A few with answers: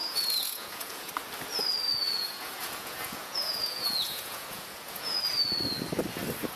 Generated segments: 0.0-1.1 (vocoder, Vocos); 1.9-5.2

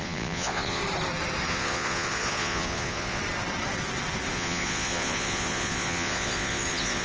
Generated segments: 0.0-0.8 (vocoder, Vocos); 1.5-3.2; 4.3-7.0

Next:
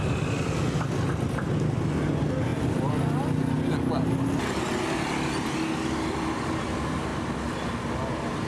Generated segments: none